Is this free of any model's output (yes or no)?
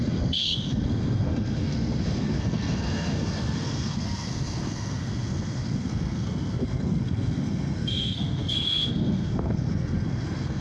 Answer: no